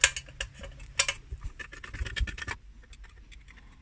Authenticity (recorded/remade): recorded